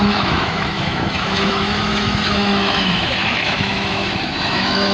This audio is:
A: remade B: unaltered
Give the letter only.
A